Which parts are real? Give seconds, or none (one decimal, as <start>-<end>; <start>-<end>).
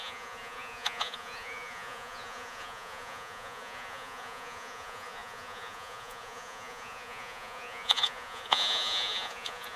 none